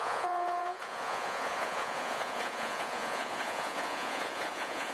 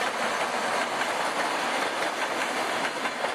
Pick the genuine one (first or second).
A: second